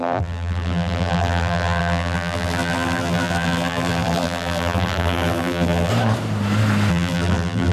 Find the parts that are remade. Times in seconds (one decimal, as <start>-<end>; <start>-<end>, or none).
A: 0.0-5.9; 6.9-7.7